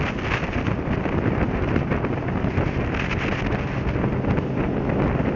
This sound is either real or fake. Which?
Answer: real